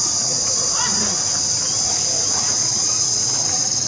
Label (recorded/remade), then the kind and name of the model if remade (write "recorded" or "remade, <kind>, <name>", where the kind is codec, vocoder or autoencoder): remade, vocoder, Vocos